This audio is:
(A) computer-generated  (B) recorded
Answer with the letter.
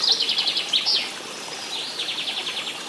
B